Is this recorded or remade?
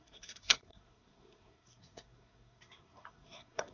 remade